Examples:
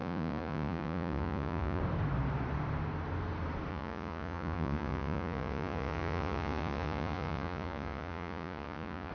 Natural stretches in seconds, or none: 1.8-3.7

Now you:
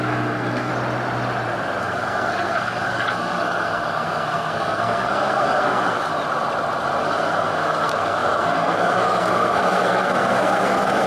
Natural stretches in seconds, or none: 0.7-1.8; 6.1-7.0

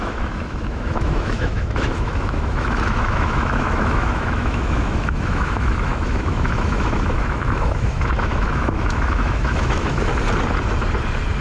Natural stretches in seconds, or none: 10.1-11.4